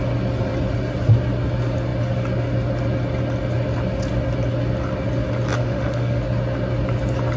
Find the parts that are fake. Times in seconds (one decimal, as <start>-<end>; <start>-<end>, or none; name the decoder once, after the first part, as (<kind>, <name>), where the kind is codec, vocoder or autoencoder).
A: 5.6-6.2 (autoencoder, DAC-VAE)